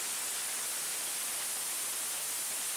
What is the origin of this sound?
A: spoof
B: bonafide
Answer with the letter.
B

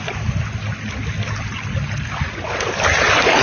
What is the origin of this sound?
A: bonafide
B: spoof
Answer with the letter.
A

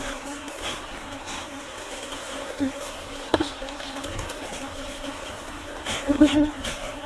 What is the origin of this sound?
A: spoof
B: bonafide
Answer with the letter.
A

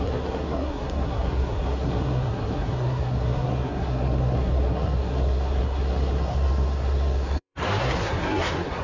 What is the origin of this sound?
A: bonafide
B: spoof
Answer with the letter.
B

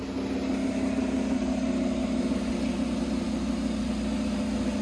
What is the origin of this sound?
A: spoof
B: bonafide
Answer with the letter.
B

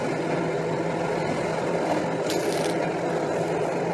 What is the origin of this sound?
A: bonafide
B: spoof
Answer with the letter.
A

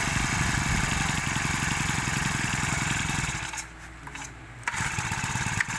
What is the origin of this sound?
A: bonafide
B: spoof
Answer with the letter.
A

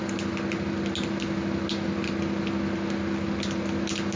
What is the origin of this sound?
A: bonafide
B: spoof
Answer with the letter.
A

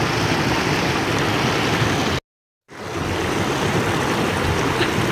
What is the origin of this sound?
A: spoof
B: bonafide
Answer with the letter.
B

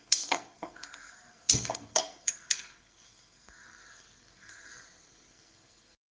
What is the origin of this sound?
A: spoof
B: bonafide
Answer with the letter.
A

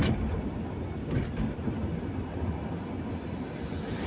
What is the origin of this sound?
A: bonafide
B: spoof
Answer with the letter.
A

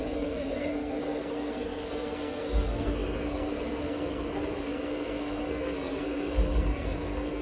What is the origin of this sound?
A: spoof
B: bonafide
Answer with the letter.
A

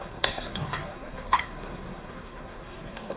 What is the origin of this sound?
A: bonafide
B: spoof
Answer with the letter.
B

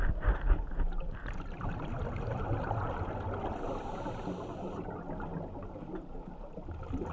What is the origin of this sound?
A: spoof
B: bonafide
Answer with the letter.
B